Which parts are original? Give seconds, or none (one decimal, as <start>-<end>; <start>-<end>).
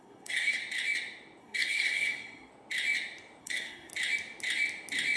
0.6-1.4; 2.5-3.4; 3.9-5.2